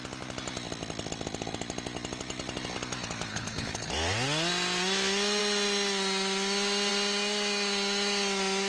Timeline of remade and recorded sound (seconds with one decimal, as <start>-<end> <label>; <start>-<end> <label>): 0.0-3.3 recorded; 3.3-3.9 remade; 3.9-8.7 recorded